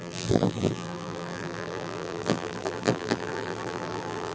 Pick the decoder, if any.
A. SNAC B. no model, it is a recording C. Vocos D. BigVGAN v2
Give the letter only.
D